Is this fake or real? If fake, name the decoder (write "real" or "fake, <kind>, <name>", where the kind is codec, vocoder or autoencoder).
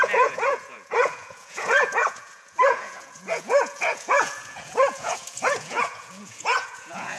fake, vocoder, Vocos